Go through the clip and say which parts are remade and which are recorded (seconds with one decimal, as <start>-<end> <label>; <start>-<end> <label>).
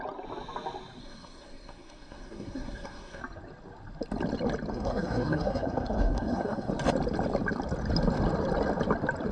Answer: 0.0-1.0 recorded; 1.0-3.2 remade; 3.2-4.7 recorded; 4.7-6.7 remade; 6.7-9.3 recorded